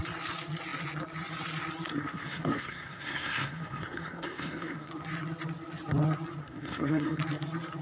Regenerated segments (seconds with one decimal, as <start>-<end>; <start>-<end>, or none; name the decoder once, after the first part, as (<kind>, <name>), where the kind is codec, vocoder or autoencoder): 1.9-4.9 (codec, SNAC); 6.4-7.2